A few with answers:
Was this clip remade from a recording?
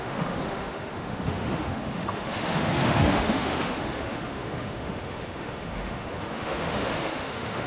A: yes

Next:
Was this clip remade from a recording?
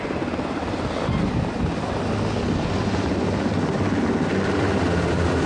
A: no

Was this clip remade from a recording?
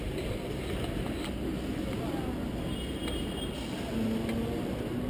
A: no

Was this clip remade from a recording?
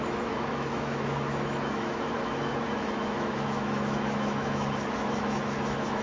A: yes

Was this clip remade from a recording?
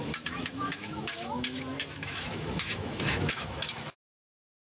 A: yes